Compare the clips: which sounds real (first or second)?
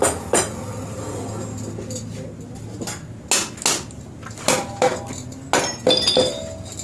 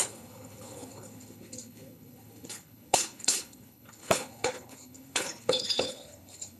first